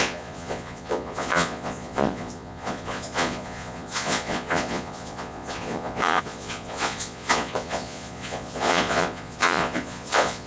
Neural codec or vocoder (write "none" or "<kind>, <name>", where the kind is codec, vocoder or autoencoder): vocoder, Vocos